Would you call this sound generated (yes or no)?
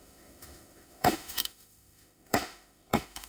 yes